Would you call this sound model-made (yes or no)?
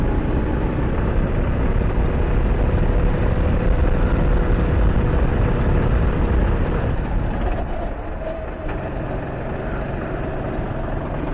no